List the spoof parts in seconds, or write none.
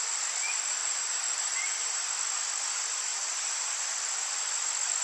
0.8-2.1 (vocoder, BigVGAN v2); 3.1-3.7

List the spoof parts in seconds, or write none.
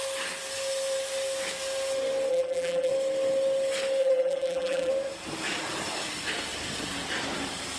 2.3-2.9 (vocoder, BigVGAN v2); 4.0-4.9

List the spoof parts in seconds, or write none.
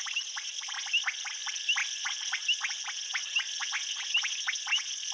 0.0-5.1 (vocoder, BigVGAN v2)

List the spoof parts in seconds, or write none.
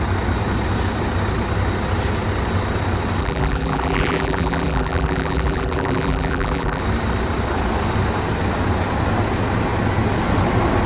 3.2-6.8 (vocoder, BigVGAN v2)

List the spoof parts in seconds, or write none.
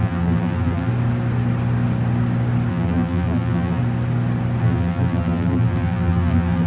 0.0-0.9 (vocoder, BigVGAN v2); 2.7-3.8; 4.6-6.7